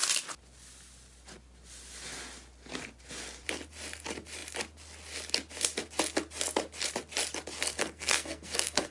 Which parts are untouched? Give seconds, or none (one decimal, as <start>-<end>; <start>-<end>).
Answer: 0.0-7.8